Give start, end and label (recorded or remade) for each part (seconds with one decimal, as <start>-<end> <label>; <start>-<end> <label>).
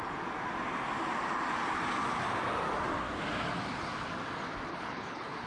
0.0-4.7 recorded; 4.7-5.5 remade